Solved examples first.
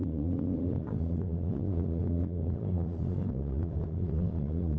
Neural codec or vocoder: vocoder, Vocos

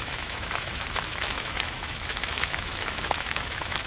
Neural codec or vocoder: autoencoder, DAC-VAE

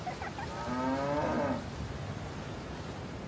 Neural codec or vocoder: none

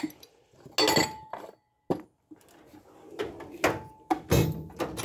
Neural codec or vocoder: none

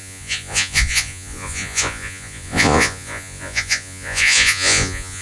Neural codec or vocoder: vocoder, Vocos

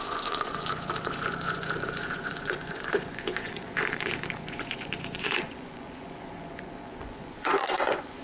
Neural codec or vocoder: vocoder, Vocos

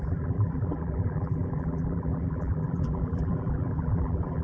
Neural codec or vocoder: vocoder, BigVGAN v2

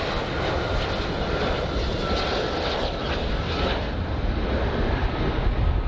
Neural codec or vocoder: none